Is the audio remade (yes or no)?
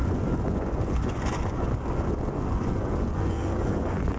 yes